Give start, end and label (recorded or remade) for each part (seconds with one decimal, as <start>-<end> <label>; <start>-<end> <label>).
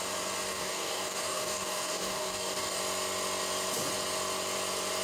0.0-0.5 recorded; 0.5-2.8 remade; 2.8-5.0 recorded